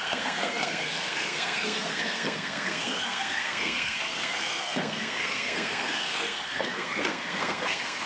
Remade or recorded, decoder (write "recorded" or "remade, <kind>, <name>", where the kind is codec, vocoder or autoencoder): remade, codec, SNAC